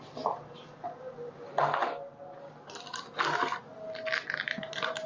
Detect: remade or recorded recorded